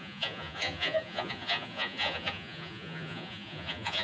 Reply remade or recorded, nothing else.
remade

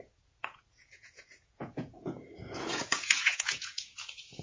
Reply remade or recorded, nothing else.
remade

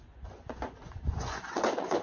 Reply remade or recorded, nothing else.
remade